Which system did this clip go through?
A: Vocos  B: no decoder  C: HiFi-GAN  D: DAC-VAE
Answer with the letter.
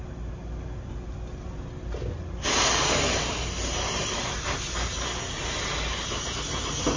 B